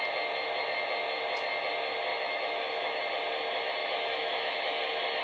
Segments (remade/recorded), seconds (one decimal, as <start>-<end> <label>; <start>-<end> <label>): 0.0-2.1 recorded; 2.1-3.0 remade; 3.0-3.8 recorded; 3.8-4.8 remade; 4.8-5.2 recorded